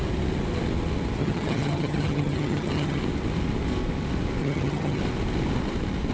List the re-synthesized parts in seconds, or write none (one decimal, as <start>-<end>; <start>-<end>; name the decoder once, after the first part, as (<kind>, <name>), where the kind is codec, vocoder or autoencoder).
1.2-3.0 (vocoder, HiFi-GAN); 4.4-5.0